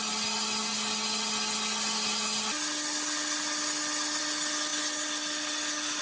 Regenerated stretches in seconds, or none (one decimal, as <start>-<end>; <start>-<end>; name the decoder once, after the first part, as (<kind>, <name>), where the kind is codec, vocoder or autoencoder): none